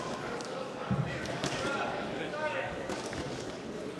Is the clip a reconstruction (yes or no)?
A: yes